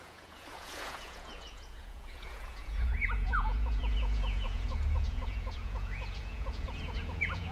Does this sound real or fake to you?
fake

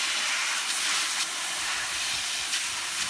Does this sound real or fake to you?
real